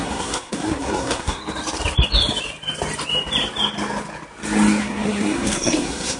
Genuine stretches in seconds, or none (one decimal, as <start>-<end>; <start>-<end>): 1.4-4.8